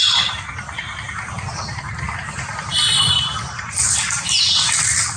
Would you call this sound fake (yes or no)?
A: no